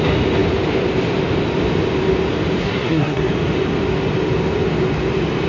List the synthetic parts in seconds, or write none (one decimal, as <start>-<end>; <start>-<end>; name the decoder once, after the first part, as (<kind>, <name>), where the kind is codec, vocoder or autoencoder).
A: 2.6-3.3 (codec, SNAC)